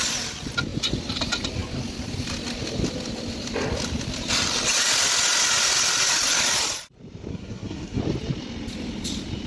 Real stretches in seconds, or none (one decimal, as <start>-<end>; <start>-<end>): 0.0-7.3; 8.0-9.5